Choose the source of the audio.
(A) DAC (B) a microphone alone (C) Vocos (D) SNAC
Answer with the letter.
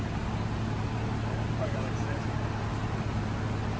B